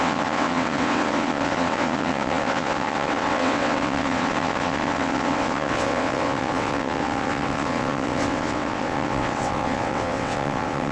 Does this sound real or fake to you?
fake